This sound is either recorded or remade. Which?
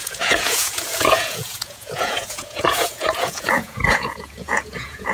remade